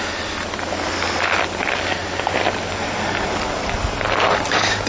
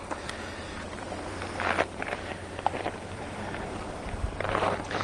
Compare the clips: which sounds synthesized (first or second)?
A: second